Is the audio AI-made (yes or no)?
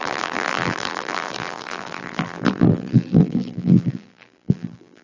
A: yes